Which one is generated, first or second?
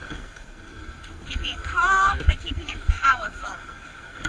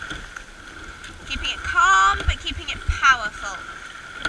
first